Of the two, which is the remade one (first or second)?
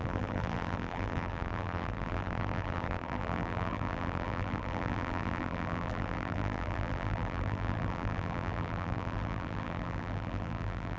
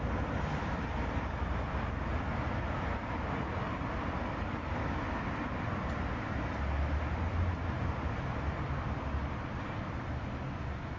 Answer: first